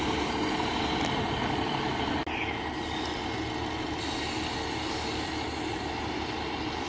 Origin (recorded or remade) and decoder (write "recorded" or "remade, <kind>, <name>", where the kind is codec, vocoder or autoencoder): recorded